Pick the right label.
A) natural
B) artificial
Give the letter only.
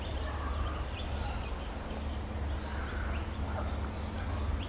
A